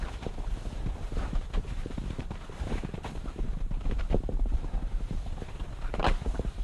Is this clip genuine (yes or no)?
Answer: no